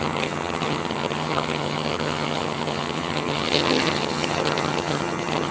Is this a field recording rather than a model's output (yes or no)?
no